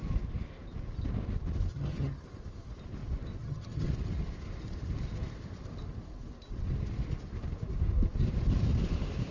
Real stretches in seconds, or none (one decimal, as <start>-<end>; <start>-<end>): 0.0-1.7; 2.2-3.4; 3.9-9.3